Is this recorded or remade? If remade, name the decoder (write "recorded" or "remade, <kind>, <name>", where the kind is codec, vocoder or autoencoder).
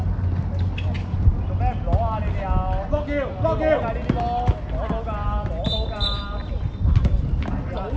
recorded